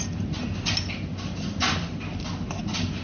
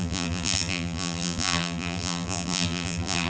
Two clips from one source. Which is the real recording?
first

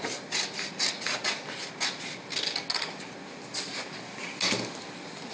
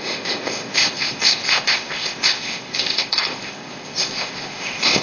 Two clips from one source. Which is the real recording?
first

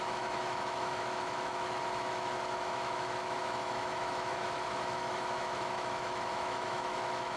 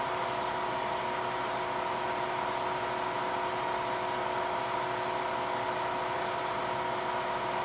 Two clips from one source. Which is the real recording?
second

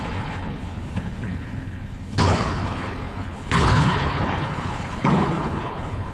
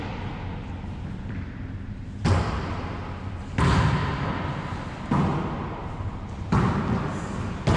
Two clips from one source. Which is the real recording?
second